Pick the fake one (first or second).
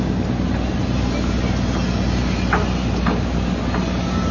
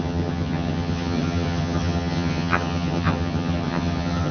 second